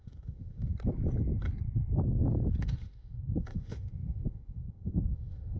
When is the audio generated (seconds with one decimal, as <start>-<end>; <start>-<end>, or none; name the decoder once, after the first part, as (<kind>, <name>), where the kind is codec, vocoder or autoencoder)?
0.0-0.7 (autoencoder, DAC-VAE); 2.6-5.6